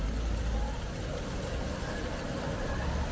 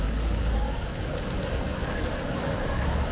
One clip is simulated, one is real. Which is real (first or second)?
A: first